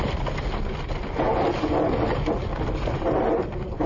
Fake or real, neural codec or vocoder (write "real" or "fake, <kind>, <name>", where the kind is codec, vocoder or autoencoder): real